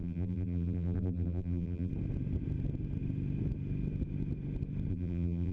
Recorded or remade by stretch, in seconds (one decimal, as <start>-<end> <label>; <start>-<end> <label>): 0.0-1.9 remade; 1.9-4.9 recorded; 4.9-5.5 remade